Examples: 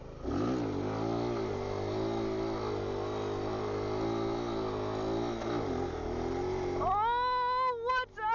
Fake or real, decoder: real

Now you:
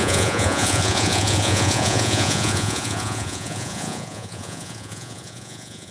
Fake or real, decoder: fake, vocoder, Vocos